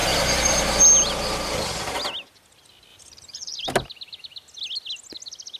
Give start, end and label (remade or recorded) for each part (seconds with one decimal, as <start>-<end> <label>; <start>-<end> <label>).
0.0-0.8 remade; 0.8-2.9 recorded; 2.9-3.6 remade; 3.6-5.6 recorded